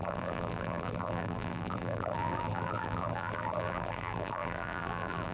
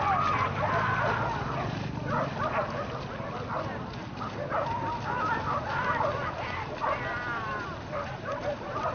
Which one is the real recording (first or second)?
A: second